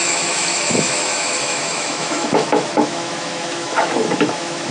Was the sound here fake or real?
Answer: fake